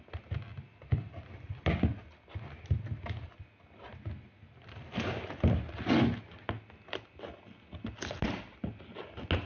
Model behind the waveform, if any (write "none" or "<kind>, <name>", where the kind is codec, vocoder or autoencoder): none